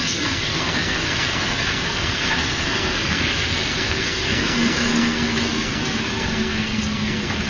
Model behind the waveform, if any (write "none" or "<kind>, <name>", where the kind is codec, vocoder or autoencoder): codec, SNAC